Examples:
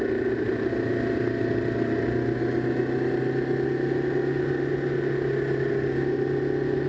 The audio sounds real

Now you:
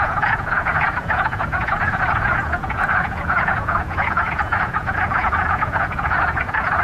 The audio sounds fake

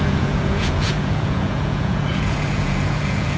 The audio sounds fake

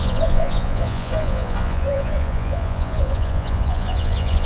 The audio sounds fake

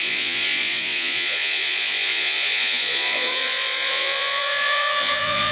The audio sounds fake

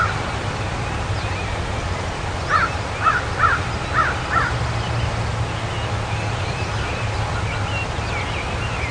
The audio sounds real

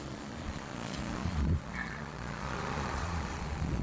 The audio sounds fake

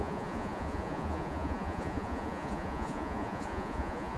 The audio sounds fake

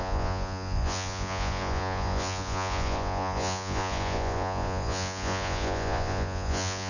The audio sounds fake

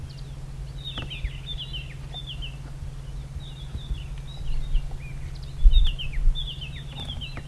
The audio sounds real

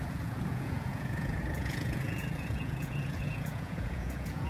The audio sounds fake